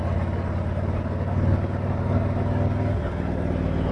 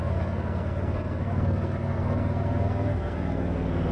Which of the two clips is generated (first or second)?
second